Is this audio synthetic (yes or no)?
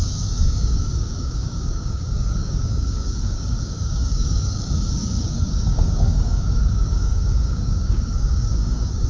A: yes